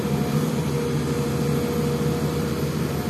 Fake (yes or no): no